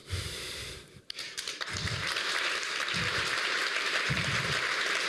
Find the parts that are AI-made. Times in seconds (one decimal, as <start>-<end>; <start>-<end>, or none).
2.4-5.1